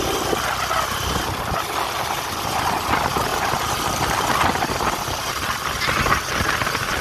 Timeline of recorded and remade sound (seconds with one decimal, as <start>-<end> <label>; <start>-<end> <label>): 0.0-7.0 recorded